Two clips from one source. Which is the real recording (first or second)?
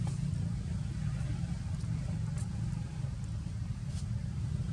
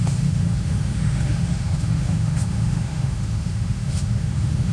first